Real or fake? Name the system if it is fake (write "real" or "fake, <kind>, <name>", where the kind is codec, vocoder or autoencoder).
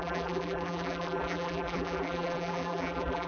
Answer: fake, vocoder, BigVGAN v2